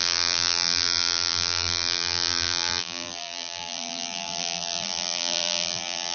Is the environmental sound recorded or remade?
remade